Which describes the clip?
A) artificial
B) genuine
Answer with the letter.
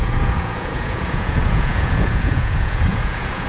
A